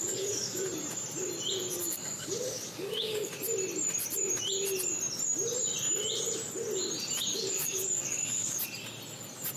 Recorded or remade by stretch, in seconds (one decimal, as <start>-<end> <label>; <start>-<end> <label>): 0.0-0.6 remade; 0.6-1.8 recorded; 1.8-3.3 remade; 3.3-7.3 recorded; 7.3-8.6 remade; 8.6-9.6 recorded